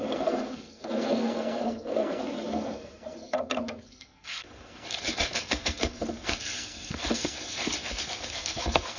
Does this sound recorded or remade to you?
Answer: remade